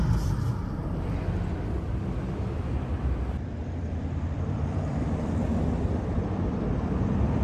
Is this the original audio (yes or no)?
no